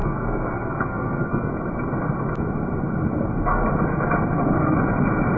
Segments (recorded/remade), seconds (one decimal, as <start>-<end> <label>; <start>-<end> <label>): 0.0-1.5 remade; 1.5-5.4 recorded